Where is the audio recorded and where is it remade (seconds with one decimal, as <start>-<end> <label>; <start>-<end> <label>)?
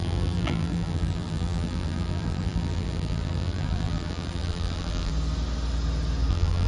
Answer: 0.0-5.1 remade; 5.1-6.3 recorded; 6.3-6.7 remade